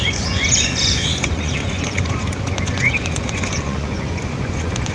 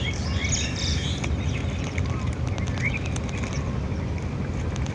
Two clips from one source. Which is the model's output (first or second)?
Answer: first